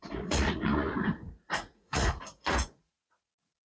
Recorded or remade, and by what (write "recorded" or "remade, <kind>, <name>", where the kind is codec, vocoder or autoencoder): remade, vocoder, Vocos